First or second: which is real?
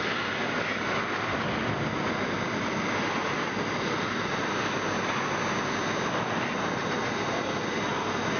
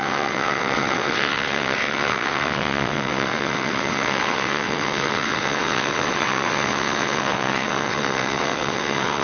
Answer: first